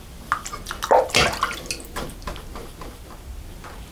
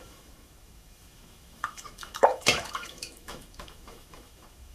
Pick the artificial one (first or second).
second